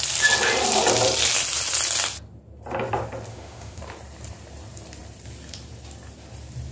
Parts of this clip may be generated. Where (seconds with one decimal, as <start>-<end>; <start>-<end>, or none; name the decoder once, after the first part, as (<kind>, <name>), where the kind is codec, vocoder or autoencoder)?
3.3-3.8 (autoencoder, DAC-VAE)

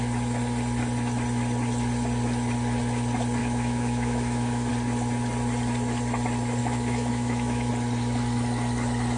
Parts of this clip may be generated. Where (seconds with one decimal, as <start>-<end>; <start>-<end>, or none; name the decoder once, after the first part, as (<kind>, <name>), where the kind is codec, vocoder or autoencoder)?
3.4-4.7 (autoencoder, DAC-VAE); 6.6-7.7

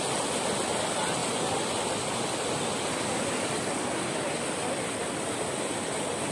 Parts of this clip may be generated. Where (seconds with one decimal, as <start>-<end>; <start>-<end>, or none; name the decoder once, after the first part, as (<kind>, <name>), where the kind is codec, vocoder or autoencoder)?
1.2-5.0 (vocoder, BigVGAN v2)

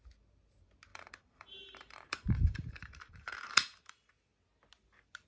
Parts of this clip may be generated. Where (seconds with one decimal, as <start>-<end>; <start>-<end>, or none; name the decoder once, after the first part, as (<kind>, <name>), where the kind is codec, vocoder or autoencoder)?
0.9-4.1 (vocoder, BigVGAN v2)

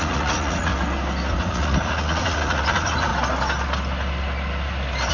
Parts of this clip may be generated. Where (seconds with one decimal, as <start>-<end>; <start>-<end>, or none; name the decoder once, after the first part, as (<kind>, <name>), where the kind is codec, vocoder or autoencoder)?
0.0-0.7 (vocoder, Vocos); 1.4-3.1

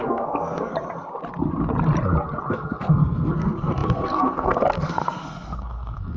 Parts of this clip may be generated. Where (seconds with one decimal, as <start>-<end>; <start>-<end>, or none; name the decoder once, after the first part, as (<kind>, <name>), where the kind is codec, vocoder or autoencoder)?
0.0-0.7 (codec, SNAC); 2.5-6.2